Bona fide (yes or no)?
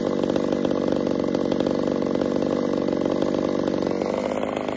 yes